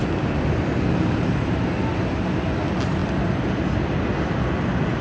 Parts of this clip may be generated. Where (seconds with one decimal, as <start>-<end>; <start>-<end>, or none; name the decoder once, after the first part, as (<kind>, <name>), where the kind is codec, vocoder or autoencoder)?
none